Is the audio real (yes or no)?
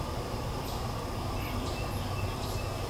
yes